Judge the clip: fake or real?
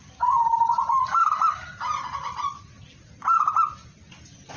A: real